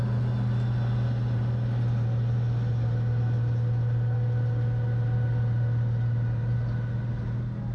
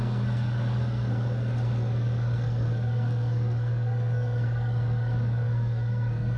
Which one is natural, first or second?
first